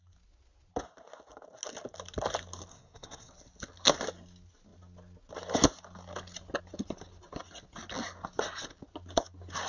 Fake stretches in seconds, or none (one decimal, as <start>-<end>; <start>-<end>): 2.7-3.3